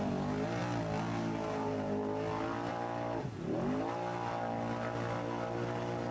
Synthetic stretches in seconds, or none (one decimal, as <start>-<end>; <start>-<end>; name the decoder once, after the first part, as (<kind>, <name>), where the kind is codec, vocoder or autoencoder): none